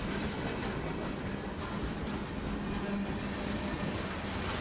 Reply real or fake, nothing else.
real